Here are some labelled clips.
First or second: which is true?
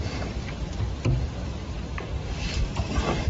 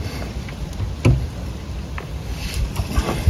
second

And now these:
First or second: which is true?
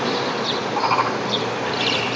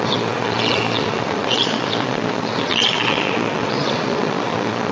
first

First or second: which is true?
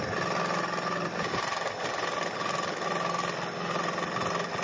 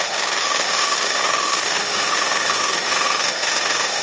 first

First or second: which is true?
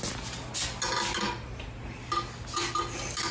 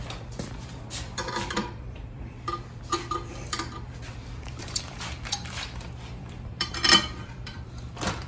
first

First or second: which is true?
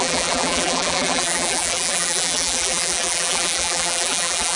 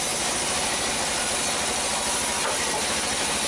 second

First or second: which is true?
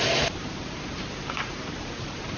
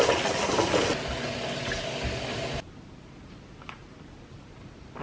second